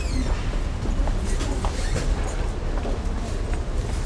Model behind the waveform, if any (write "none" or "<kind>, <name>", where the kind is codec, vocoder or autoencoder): none